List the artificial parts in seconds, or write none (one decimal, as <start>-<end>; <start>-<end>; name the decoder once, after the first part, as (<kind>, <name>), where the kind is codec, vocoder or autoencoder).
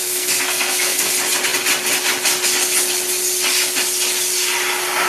0.0-1.1 (codec, SNAC)